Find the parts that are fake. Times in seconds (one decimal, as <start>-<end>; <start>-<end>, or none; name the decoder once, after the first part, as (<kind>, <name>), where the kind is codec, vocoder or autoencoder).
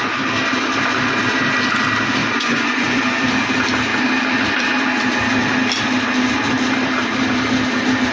2.2-3.0 (vocoder, Vocos)